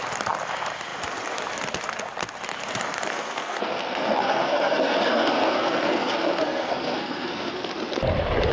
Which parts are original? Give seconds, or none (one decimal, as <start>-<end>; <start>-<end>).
0.0-3.1; 7.7-8.5